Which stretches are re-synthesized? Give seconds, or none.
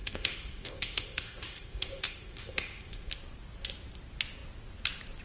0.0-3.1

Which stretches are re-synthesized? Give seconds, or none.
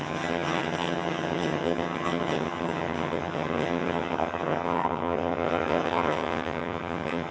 0.0-7.3